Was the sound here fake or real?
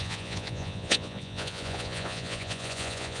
fake